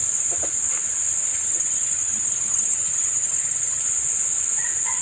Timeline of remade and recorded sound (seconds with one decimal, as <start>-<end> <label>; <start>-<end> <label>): 0.0-1.3 recorded; 1.3-3.8 remade; 3.8-5.0 recorded